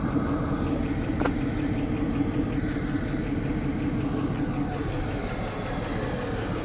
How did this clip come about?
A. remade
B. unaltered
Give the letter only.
B